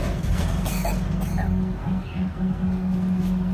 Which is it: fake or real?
fake